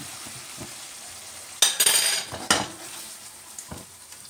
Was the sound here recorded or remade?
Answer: recorded